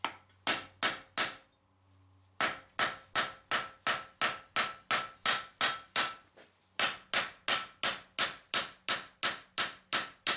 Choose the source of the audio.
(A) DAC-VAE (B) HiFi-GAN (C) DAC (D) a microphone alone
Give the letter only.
D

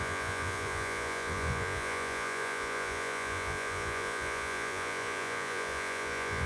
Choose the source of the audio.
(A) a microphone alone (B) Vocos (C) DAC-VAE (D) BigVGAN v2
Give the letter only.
B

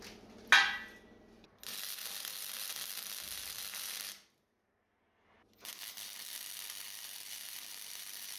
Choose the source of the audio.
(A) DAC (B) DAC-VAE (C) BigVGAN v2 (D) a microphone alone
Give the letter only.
D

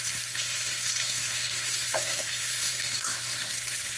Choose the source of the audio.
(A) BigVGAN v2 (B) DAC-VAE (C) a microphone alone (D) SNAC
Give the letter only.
D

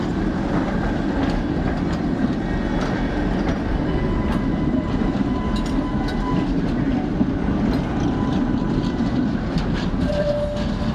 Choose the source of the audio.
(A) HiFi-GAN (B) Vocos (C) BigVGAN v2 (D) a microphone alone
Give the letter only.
D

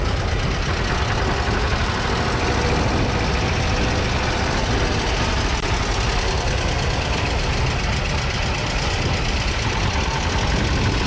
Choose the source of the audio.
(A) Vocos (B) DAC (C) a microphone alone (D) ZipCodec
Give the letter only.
C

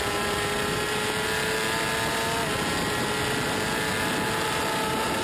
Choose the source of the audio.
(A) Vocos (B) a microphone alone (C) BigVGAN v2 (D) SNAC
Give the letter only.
B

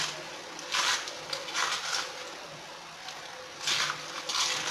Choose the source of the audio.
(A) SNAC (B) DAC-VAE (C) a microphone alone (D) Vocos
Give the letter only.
C